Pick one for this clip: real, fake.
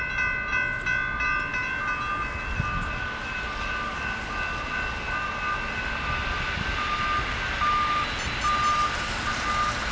real